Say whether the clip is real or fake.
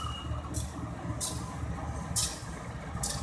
real